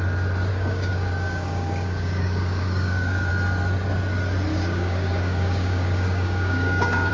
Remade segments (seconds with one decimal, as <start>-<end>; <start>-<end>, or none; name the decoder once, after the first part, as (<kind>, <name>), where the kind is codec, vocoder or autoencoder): 0.5-3.3 (codec, DAC); 4.5-7.1